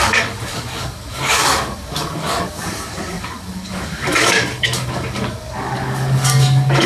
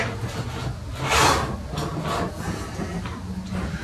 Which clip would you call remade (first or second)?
first